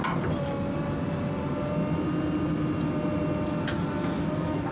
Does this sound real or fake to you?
real